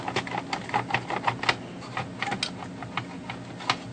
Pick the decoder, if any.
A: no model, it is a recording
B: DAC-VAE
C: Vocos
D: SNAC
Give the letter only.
A